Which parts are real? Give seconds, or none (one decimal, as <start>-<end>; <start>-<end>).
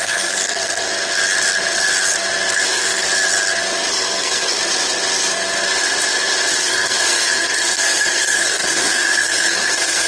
0.9-2.7; 3.1-3.9; 4.6-6.6